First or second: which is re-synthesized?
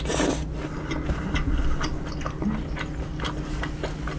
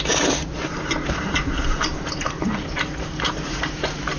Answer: second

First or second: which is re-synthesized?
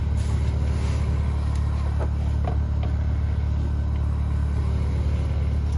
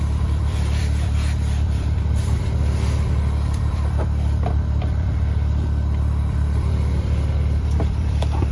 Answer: second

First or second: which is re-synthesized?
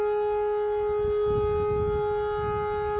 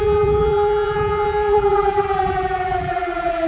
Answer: second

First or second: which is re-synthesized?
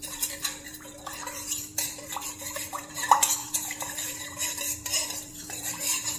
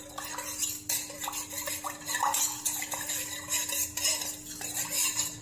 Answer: first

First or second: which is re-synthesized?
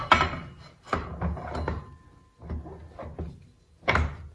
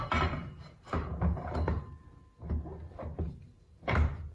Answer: second